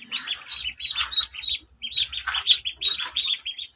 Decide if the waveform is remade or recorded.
recorded